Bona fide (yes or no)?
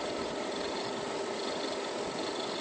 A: yes